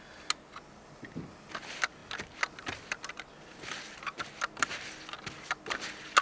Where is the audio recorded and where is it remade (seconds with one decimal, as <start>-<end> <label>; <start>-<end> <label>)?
0.0-6.2 recorded